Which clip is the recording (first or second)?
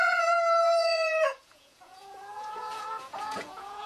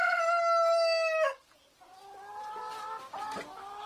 second